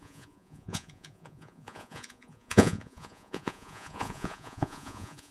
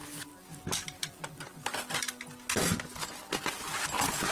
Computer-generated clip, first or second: first